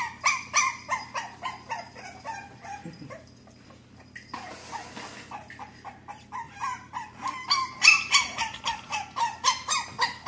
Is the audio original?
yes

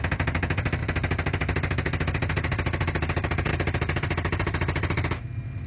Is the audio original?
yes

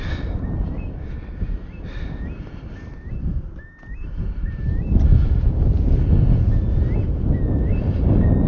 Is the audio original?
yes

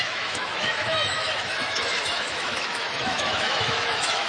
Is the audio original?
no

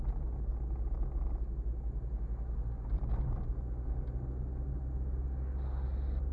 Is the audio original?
yes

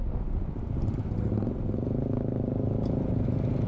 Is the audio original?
yes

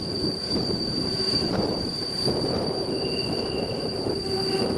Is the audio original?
no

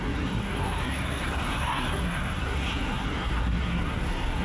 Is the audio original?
no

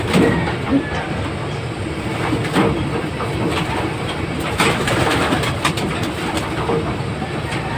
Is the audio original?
no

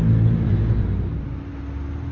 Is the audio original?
yes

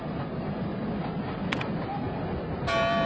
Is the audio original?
yes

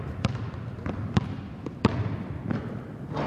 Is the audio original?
no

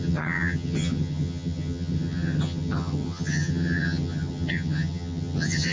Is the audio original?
no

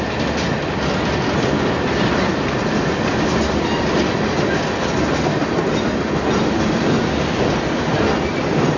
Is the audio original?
yes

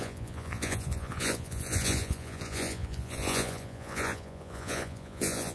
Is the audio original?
no